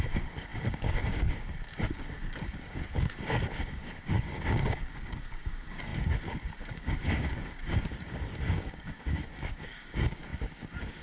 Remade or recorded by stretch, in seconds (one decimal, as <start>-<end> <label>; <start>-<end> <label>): 0.0-11.0 remade